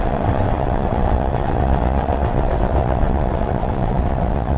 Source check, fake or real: fake